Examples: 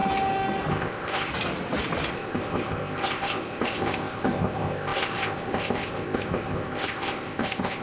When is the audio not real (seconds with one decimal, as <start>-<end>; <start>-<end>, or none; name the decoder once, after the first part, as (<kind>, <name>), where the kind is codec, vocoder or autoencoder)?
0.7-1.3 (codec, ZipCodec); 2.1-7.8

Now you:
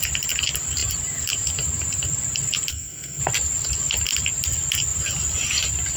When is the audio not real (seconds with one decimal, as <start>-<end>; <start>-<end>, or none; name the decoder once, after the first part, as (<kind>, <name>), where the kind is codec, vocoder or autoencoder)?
2.7-3.2 (codec, SNAC)

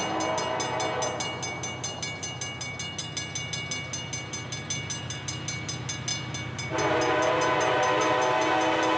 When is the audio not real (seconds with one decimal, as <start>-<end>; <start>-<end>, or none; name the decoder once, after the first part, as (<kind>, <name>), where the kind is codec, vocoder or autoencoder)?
none

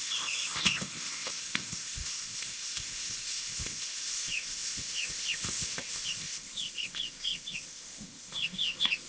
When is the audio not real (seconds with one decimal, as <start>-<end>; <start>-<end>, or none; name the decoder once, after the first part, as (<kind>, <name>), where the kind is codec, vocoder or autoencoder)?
0.0-9.1 (codec, ZipCodec)

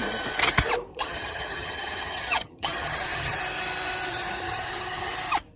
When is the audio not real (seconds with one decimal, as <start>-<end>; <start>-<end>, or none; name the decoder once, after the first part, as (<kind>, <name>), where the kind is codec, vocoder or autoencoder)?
0.9-3.4 (vocoder, HiFi-GAN); 4.1-5.1

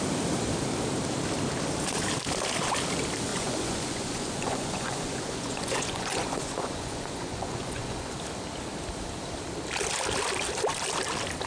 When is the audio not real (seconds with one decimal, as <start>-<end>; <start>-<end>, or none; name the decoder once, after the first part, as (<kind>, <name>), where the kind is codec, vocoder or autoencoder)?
3.3-8.1 (vocoder, Vocos)

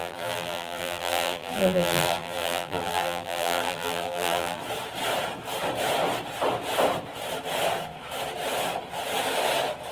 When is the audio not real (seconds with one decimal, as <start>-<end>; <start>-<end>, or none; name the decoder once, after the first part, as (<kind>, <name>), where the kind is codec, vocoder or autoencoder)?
0.0-4.6 (vocoder, BigVGAN v2)